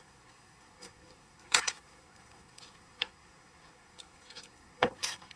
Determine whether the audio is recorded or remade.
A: remade